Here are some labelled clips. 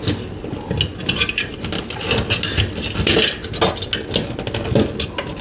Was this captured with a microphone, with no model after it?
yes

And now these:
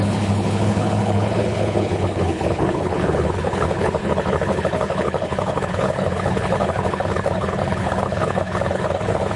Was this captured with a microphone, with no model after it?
no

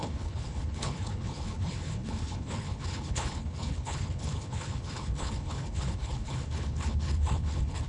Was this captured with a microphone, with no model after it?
no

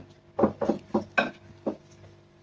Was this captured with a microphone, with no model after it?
yes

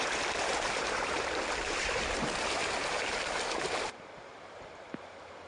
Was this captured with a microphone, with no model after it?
no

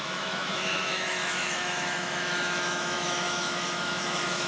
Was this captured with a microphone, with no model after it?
no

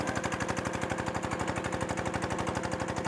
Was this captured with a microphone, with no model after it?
yes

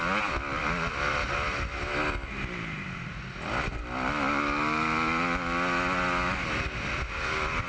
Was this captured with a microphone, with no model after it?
yes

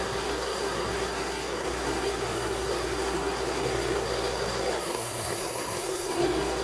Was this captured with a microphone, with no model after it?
no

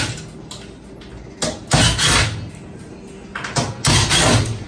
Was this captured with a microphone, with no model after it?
yes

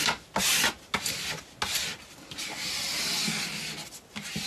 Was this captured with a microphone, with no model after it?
yes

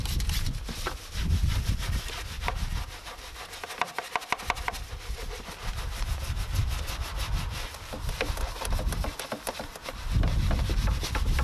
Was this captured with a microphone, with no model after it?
yes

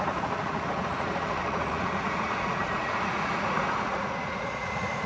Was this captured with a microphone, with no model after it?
no